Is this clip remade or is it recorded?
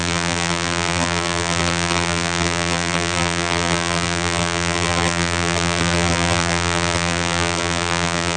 remade